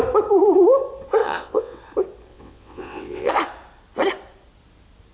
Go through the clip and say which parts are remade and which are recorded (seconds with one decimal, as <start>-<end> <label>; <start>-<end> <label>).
0.0-1.2 recorded; 1.2-1.8 remade; 1.8-2.3 recorded; 2.3-3.3 remade; 3.3-5.1 recorded